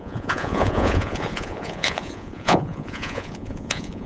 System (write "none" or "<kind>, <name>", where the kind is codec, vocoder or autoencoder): vocoder, Vocos